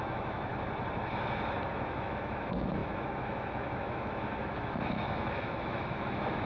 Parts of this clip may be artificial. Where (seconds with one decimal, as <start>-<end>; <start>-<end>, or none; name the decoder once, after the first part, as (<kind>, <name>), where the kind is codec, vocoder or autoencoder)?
0.0-0.5 (autoencoder, DAC-VAE); 1.7-6.5